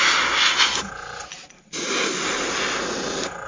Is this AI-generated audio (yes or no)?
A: no